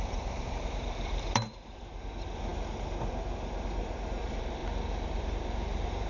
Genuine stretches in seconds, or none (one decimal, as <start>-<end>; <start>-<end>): 2.5-3.8; 4.6-5.2